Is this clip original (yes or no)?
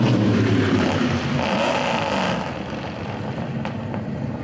yes